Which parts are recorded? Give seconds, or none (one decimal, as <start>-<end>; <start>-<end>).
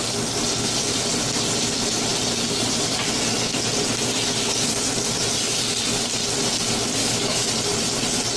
0.0-7.0; 7.5-8.4